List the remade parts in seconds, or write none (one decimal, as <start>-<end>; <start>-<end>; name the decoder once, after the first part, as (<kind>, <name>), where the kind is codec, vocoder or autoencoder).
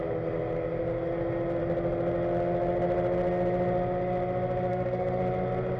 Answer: 4.7-5.2 (codec, SNAC)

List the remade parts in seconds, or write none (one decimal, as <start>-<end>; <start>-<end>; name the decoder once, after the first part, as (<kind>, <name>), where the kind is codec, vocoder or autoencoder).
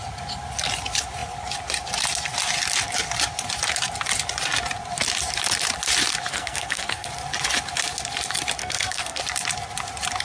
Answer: 6.3-7.1 (codec, SNAC); 8.6-9.2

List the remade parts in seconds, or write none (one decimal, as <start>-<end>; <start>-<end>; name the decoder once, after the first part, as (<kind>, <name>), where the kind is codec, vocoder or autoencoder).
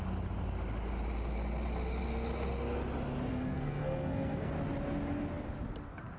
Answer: 3.3-4.5 (codec, SNAC)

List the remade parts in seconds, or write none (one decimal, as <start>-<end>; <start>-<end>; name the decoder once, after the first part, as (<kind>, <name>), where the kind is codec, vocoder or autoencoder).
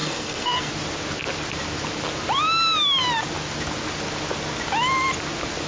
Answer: 0.0-0.7 (codec, SNAC)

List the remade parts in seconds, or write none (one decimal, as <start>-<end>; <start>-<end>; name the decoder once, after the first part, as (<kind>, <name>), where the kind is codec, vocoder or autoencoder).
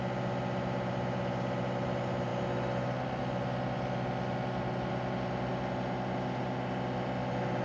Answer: none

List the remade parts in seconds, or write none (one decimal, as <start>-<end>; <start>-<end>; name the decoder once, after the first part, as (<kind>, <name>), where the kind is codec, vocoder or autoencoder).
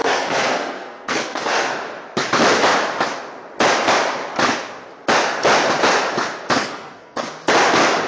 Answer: 0.0-1.7 (codec, SNAC); 6.6-7.3